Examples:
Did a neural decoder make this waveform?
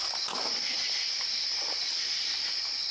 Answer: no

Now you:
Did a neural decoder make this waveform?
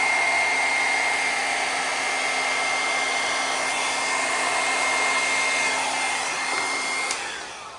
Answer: no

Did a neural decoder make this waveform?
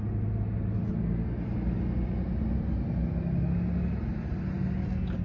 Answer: no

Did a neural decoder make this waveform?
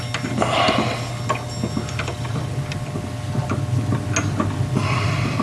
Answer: no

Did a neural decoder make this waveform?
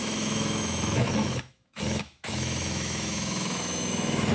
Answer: yes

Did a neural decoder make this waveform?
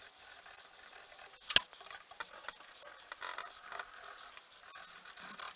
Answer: no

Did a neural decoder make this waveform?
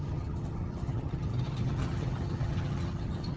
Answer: yes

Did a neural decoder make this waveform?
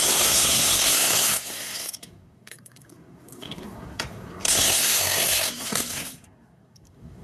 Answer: yes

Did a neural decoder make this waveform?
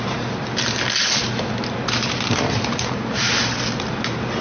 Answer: no